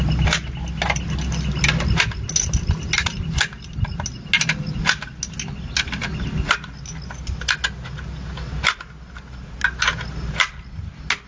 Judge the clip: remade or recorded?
recorded